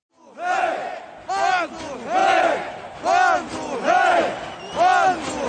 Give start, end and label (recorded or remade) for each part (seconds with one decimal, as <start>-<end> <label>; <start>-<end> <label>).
0.0-0.8 recorded; 0.8-1.3 remade; 1.3-2.2 recorded; 2.2-2.8 remade; 2.8-5.5 recorded